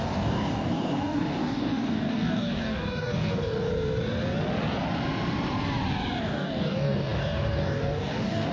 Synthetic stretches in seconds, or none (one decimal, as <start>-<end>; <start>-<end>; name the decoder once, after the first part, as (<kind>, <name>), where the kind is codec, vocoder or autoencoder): 0.0-3.7 (codec, DAC); 6.2-8.5